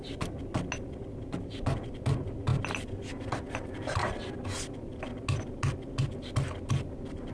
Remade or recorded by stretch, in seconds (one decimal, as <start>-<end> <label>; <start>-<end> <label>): 0.0-7.3 recorded